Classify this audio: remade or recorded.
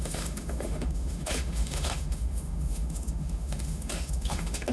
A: remade